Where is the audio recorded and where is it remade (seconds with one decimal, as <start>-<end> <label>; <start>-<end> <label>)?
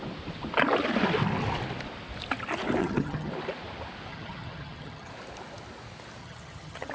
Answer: 0.0-2.8 recorded; 2.8-3.3 remade; 3.3-4.1 recorded; 4.1-5.1 remade; 5.1-6.2 recorded; 6.2-6.9 remade